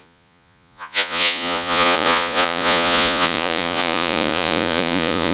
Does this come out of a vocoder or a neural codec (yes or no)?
yes